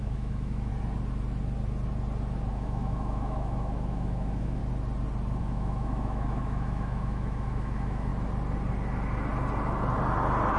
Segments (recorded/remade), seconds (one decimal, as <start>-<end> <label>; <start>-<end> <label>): 0.0-0.7 remade; 0.7-2.5 recorded; 2.5-4.6 remade; 4.6-5.4 recorded; 5.4-8.1 remade; 8.1-10.6 recorded